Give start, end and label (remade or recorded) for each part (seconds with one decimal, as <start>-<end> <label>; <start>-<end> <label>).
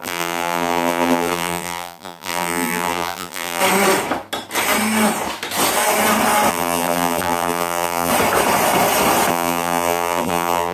0.0-3.6 remade; 3.6-6.5 recorded; 6.5-8.1 remade; 8.1-9.3 recorded; 9.3-10.7 remade